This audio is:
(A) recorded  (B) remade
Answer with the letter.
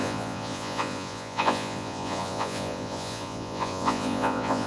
B